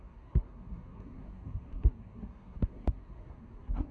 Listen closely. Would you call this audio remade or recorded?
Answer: remade